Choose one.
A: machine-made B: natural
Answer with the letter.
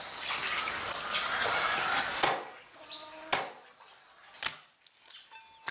B